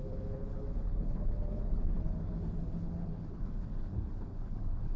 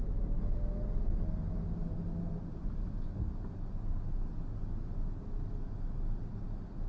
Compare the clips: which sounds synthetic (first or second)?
first